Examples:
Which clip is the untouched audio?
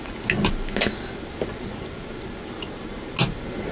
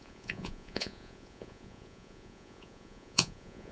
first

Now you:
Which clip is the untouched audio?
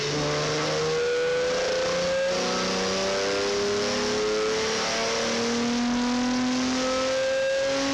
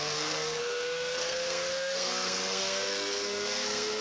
first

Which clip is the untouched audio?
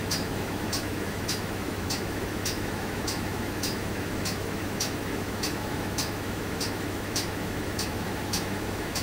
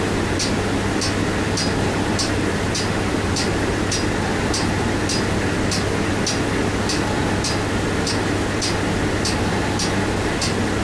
second